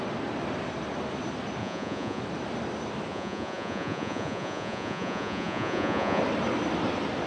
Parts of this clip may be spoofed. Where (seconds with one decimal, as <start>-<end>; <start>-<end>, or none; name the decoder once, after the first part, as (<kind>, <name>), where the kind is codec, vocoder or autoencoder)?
1.6-2.2 (vocoder, Vocos); 3.1-6.2